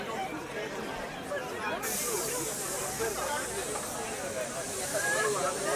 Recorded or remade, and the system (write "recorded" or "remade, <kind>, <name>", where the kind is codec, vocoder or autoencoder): recorded